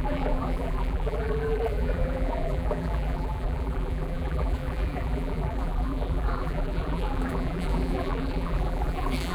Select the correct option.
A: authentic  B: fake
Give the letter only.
B